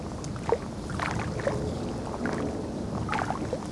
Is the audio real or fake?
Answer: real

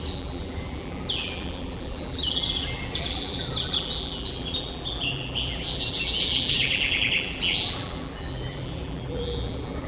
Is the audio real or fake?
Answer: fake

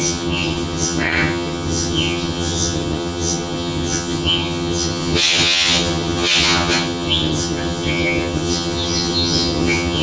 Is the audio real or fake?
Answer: fake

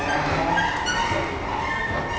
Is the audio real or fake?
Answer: real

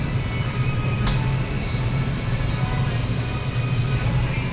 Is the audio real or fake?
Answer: real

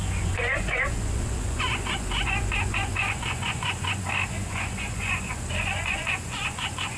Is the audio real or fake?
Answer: fake